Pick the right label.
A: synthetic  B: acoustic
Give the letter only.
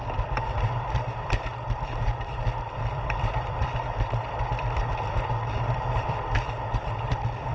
A